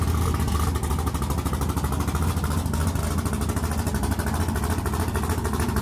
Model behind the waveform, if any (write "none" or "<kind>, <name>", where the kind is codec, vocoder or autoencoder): none